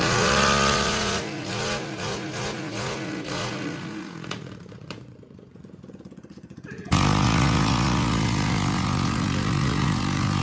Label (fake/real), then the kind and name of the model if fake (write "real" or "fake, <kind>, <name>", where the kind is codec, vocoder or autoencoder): fake, vocoder, Vocos